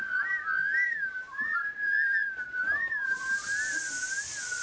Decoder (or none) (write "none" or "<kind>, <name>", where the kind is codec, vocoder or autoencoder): vocoder, BigVGAN v2